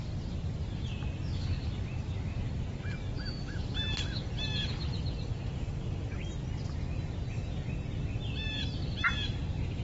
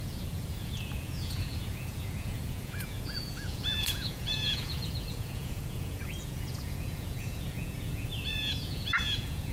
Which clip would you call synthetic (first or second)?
second